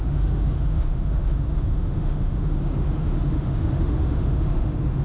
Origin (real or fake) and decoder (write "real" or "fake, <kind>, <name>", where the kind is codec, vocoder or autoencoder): fake, autoencoder, DAC-VAE